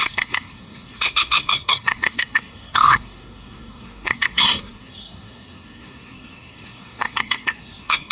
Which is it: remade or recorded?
remade